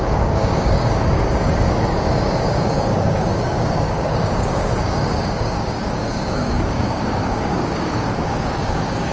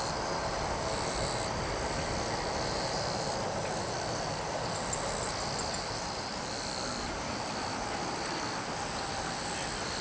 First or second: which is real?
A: second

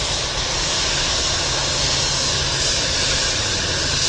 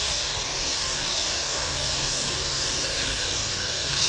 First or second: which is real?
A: first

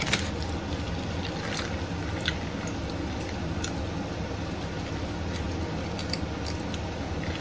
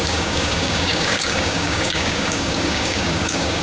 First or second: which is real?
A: first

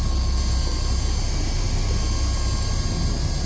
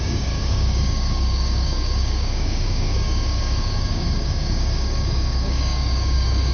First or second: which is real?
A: first